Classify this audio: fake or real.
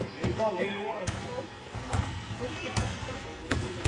fake